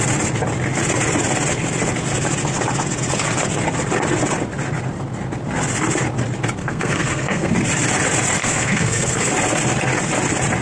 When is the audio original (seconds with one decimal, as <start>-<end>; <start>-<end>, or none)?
0.0-6.6; 7.5-8.4; 9.3-10.6